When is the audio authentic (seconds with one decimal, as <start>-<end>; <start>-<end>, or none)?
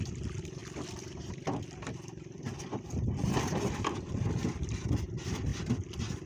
5.5-6.3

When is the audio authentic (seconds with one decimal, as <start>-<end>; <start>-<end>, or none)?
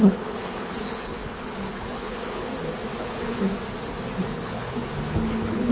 2.5-3.0; 3.5-4.2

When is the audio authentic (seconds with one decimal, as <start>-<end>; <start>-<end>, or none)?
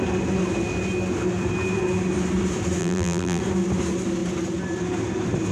0.0-2.8; 3.4-5.5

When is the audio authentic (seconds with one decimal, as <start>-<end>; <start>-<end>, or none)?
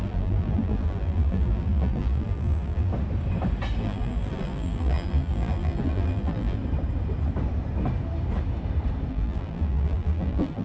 2.9-3.8; 6.6-9.1